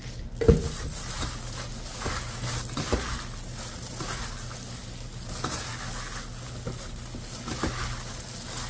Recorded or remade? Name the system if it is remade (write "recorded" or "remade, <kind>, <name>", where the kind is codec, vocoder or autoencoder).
recorded